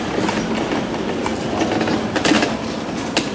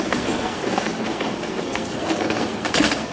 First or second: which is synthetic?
second